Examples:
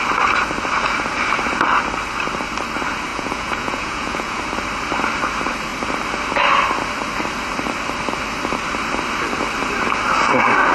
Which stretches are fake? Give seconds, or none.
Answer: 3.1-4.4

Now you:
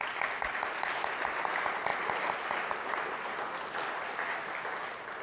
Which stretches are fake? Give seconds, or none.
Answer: none

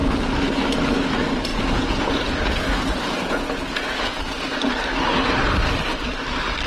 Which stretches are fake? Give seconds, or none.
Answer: 1.5-4.2

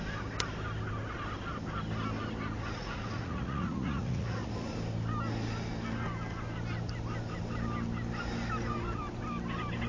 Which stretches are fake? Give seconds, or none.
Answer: 2.8-4.5

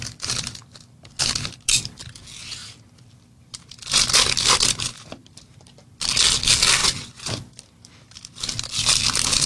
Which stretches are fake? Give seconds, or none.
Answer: 6.8-7.4